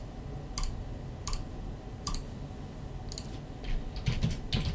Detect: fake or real real